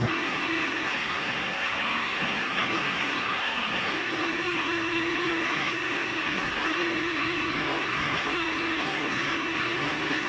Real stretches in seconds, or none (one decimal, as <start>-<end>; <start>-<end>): none